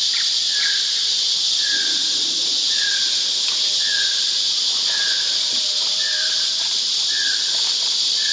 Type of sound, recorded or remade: recorded